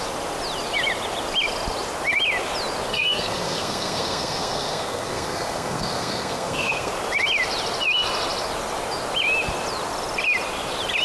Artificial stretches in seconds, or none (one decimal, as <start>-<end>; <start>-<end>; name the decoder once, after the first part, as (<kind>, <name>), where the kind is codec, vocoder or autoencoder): 2.9-6.9 (codec, SNAC)